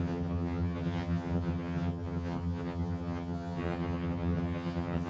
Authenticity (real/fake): fake